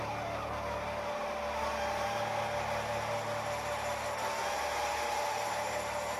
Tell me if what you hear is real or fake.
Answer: real